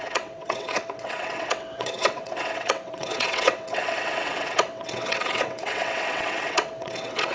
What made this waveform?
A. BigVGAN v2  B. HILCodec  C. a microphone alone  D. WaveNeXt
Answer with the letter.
D